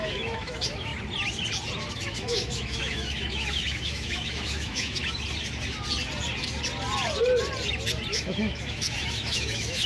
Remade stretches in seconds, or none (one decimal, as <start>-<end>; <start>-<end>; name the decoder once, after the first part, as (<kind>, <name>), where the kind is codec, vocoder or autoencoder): 0.0-0.9 (autoencoder, DAC-VAE); 1.9-5.0; 8.1-9.9